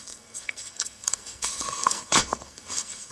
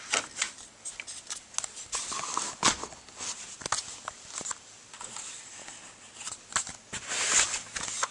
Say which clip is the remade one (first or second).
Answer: first